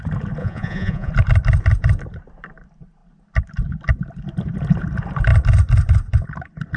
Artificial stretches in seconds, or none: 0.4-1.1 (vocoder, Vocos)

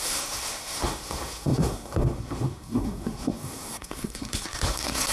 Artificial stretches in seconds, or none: 0.0-5.1 (codec, SNAC)

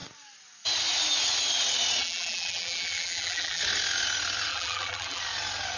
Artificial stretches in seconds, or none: 2.0-3.6 (vocoder, BigVGAN v2); 4.5-5.2

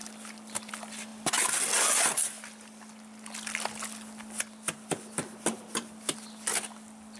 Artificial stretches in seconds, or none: none

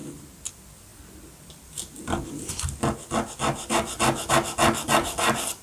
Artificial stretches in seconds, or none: none

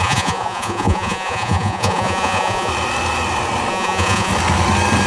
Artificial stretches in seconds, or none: 0.0-2.7 (vocoder, Vocos); 3.7-4.3

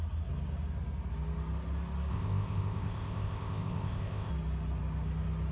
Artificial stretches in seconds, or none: 2.1-4.3 (codec, ZipCodec)